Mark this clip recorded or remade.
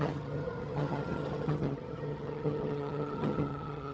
remade